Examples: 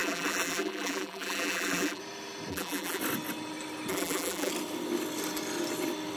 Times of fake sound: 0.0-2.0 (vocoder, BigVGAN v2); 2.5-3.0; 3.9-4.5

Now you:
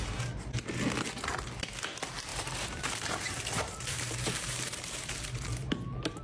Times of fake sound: 2.3-5.7 (vocoder, BigVGAN v2)

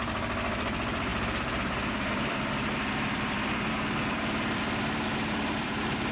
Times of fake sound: 0.0-6.1 (vocoder, BigVGAN v2)

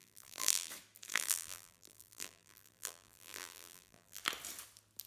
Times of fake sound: 0.0-0.7 (vocoder, BigVGAN v2); 1.1-4.2